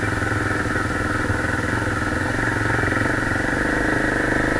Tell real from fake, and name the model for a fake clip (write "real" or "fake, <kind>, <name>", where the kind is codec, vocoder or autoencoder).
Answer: real